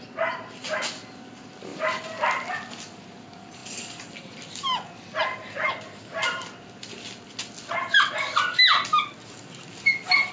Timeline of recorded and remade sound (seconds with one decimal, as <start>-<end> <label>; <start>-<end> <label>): 0.0-10.3 recorded